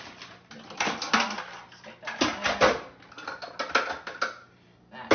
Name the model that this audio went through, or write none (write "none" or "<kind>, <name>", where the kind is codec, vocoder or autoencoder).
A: none